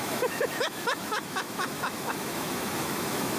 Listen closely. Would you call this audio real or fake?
fake